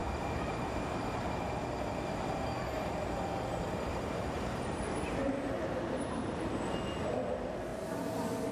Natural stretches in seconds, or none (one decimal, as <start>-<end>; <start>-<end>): 1.2-3.9; 6.6-7.7